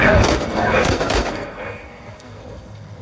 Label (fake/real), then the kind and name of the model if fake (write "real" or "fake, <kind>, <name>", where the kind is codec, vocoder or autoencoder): fake, codec, SNAC